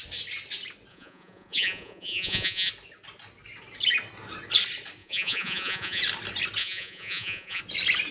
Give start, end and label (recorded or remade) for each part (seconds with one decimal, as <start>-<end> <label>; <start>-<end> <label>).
0.0-0.9 recorded; 0.9-2.7 remade; 2.7-5.0 recorded; 5.0-6.0 remade; 6.0-6.6 recorded; 6.6-7.6 remade; 7.6-8.1 recorded